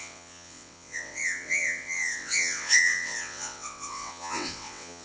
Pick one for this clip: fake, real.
fake